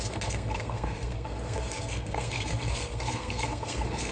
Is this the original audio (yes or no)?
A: no